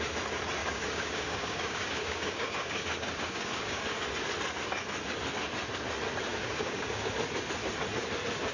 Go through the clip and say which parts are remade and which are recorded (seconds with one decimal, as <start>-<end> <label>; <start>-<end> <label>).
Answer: 0.0-0.6 recorded; 0.6-4.1 remade; 4.1-6.3 recorded; 6.3-7.1 remade; 7.1-8.5 recorded